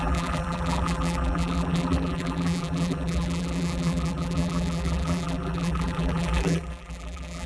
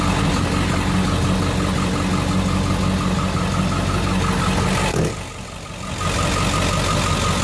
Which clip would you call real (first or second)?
second